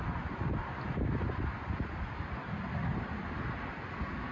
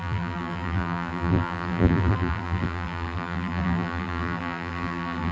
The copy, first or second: second